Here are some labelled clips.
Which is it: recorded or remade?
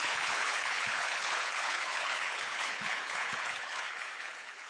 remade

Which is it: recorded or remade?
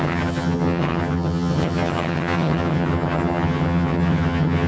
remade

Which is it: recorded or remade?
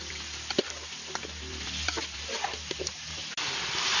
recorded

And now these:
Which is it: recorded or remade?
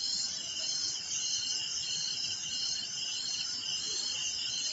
recorded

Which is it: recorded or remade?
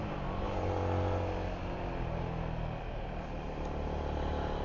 recorded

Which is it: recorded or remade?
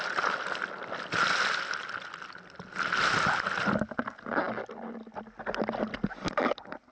recorded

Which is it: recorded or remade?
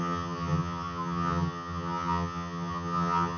remade